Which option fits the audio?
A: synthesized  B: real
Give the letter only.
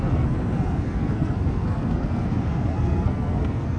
A